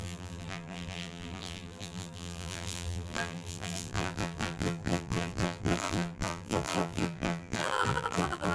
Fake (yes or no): yes